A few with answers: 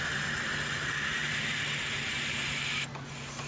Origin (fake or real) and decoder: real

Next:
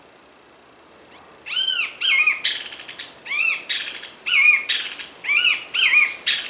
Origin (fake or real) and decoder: real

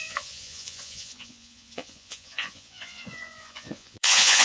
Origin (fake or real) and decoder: fake, vocoder, Vocos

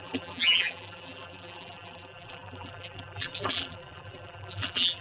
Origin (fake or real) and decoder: fake, vocoder, BigVGAN v2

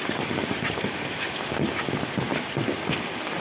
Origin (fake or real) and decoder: real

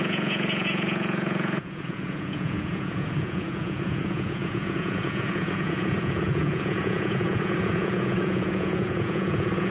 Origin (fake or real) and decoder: fake, vocoder, Vocos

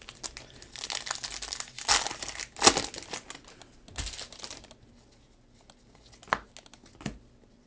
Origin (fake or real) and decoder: real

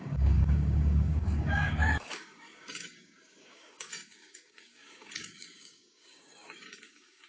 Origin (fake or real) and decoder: fake, codec, DAC